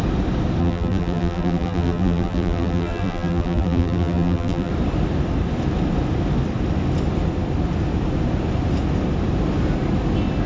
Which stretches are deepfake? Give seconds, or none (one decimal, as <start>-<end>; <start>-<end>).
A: 0.6-4.7